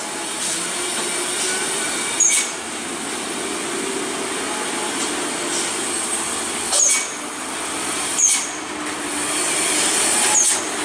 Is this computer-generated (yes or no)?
no